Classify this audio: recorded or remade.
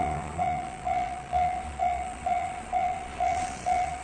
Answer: remade